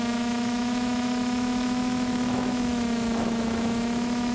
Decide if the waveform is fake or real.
fake